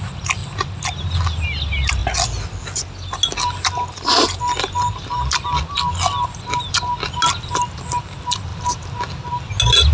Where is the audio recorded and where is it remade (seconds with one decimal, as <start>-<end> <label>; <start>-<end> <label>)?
0.0-9.9 recorded